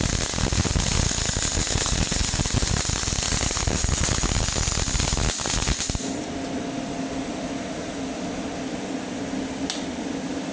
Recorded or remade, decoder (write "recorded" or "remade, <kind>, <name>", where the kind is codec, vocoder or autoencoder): recorded